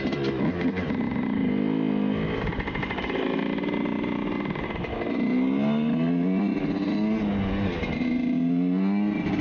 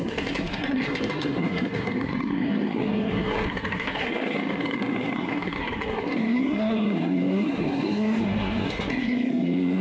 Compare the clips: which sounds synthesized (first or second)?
second